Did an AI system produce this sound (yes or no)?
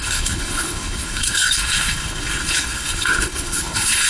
yes